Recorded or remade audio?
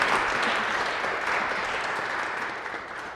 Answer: recorded